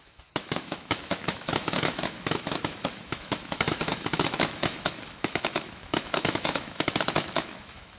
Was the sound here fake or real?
fake